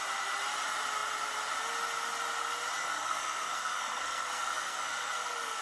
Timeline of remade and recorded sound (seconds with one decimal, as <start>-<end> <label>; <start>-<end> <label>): 0.0-2.8 recorded; 2.8-5.6 remade